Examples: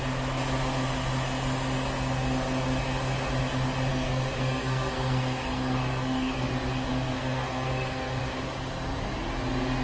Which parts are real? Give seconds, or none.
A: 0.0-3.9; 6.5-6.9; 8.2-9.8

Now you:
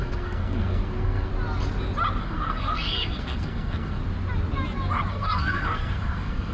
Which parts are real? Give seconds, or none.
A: 1.3-2.2; 4.0-5.1

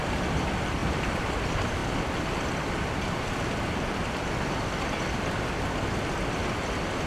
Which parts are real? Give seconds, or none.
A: 0.0-7.1